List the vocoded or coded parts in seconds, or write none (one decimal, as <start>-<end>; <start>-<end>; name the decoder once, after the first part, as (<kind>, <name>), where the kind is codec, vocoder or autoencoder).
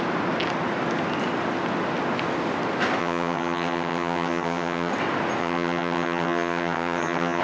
3.0-4.9 (vocoder, HiFi-GAN); 5.4-7.4